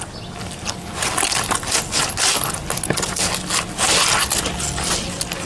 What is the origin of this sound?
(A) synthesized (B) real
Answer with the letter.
B